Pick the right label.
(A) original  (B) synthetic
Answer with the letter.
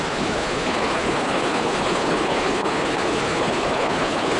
B